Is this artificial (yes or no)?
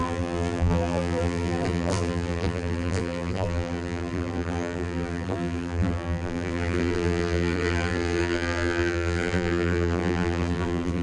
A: yes